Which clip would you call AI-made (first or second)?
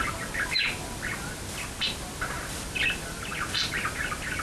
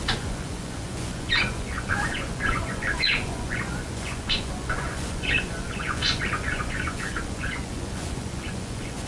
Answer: second